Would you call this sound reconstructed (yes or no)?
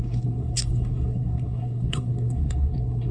yes